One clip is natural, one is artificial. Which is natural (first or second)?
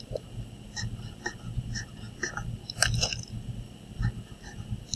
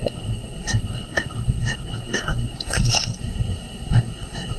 first